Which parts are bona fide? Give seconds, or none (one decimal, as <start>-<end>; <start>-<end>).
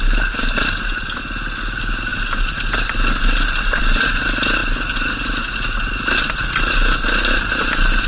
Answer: 0.0-8.1